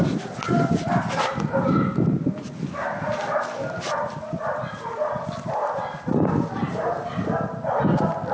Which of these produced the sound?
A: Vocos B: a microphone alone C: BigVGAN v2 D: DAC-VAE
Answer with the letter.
B